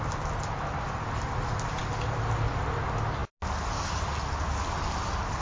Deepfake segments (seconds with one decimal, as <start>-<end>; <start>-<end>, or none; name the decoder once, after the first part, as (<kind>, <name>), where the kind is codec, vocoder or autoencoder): none